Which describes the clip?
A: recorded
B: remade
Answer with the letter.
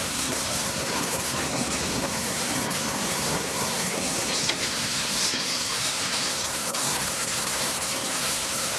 B